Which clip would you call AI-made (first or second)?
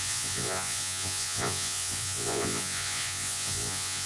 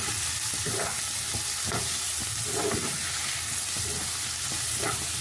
first